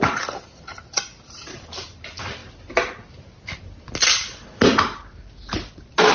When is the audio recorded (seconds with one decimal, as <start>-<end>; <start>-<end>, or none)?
0.0-6.1